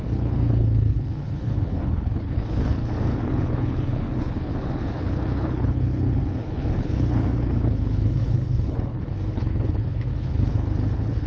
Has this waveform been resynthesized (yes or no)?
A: yes